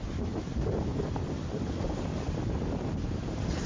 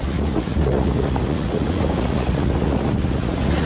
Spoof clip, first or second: second